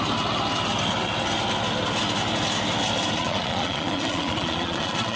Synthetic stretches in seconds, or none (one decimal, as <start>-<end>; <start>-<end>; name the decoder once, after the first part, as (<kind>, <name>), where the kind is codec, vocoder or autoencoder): 3.2-5.2 (vocoder, Vocos)